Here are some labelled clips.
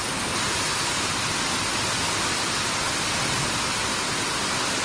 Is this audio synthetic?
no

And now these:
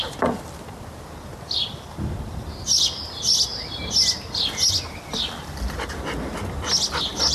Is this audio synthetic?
no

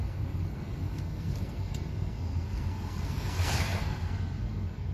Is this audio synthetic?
yes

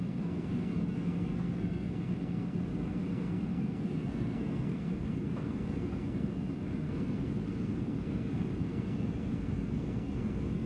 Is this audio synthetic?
yes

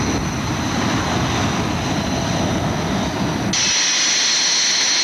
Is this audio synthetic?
no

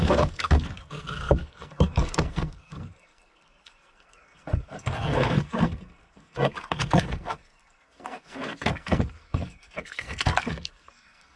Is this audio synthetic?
yes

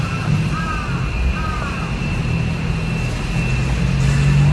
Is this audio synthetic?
no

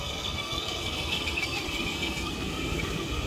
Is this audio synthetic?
yes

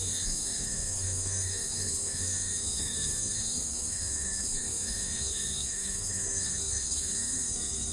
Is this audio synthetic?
yes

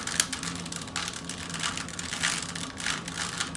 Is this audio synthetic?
no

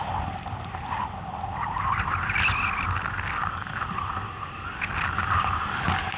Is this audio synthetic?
no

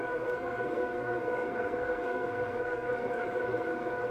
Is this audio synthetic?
yes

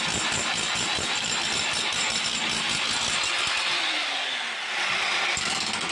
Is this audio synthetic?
no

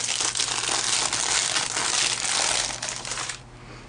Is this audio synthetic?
no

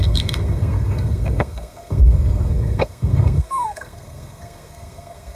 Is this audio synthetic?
yes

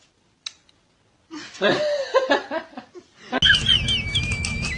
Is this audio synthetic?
no